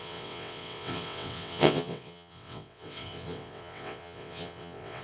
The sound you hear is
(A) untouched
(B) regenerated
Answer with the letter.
B